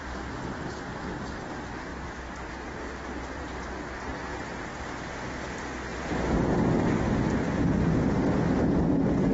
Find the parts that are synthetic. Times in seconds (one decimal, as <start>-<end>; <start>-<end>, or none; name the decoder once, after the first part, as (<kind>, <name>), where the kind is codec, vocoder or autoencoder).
1.9-2.5 (vocoder, BigVGAN v2); 4.3-5.1